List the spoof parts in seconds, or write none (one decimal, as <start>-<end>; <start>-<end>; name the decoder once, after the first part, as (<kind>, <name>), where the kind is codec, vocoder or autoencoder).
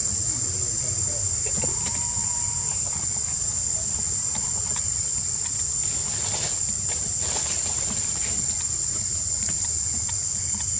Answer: none